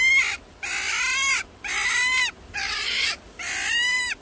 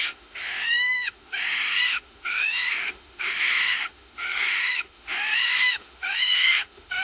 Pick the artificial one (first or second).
second